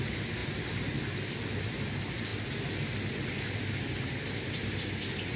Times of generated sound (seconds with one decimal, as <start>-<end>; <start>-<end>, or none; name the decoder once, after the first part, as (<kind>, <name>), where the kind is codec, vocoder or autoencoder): none